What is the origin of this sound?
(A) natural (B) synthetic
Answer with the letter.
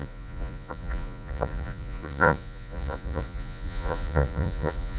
B